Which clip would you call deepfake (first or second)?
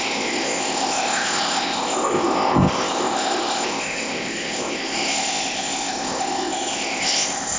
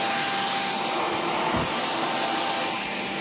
first